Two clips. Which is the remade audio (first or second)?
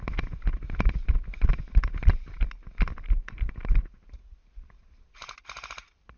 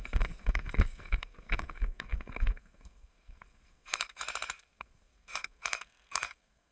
second